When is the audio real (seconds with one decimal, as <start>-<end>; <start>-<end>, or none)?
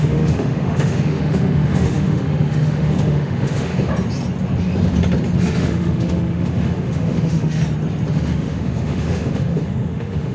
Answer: 3.7-5.4; 7.6-8.1